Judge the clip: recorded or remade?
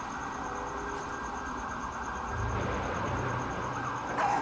recorded